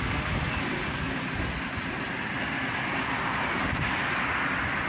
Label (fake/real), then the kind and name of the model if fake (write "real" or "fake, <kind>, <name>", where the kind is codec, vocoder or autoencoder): real